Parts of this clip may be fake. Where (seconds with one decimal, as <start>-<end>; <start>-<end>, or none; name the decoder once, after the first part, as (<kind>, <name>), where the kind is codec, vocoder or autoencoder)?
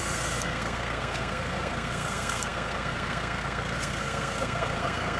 0.0-5.2 (codec, SNAC)